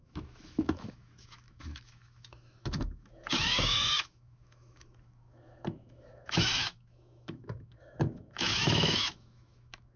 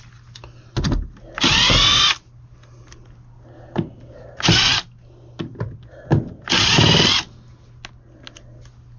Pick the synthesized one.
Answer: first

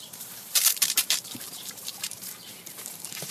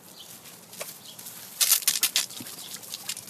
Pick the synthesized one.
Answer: first